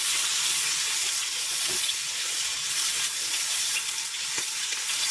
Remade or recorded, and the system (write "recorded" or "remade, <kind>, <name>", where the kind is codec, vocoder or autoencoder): remade, vocoder, Vocos